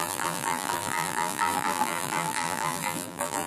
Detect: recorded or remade remade